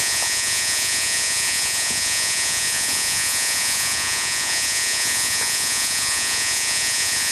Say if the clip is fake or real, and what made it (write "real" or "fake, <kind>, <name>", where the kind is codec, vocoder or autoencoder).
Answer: fake, vocoder, Vocos